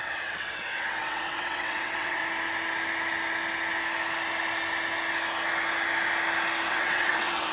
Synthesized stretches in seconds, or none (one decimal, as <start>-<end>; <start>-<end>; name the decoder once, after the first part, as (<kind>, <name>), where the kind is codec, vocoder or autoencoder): 0.0-2.2 (vocoder, WaveNeXt); 6.7-7.5